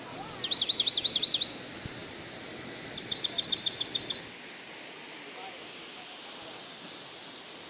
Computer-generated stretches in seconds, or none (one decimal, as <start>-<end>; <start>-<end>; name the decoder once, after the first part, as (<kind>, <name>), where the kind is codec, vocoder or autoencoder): none